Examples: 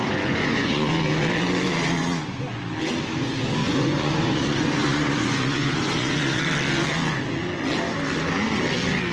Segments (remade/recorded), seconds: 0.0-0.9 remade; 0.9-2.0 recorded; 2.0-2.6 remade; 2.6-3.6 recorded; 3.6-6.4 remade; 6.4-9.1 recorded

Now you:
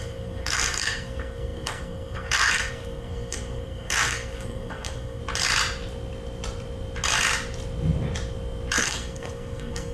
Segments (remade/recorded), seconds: 0.0-5.2 remade; 5.2-8.8 recorded; 8.8-9.9 remade

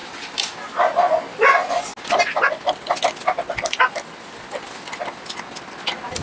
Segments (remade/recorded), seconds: 0.0-6.2 recorded

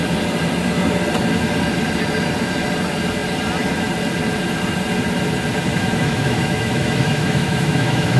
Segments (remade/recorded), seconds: 0.0-5.7 recorded; 5.7-8.2 remade